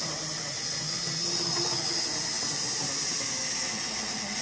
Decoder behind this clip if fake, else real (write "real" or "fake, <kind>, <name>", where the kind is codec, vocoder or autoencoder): real